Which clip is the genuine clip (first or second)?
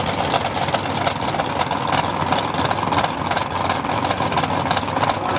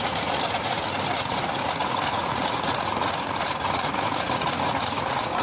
first